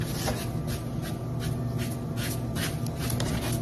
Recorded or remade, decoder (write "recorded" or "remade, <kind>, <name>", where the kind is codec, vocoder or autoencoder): recorded